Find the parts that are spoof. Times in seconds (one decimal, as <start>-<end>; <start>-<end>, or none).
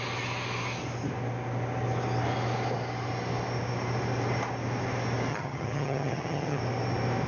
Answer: 5.3-6.6